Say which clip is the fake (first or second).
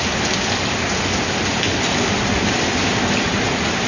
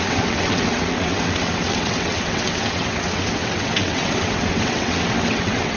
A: second